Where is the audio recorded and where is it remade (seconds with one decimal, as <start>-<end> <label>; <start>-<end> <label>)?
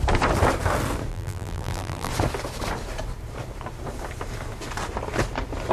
0.0-1.1 recorded; 1.1-2.1 remade; 2.1-5.7 recorded